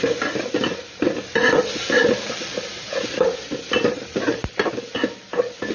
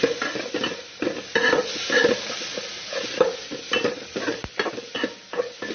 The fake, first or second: first